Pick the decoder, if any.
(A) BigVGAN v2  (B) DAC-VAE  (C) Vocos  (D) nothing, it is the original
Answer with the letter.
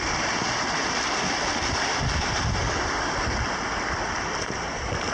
D